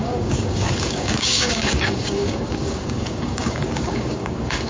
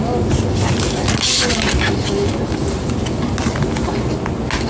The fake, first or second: first